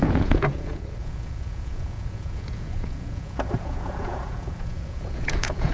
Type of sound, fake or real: fake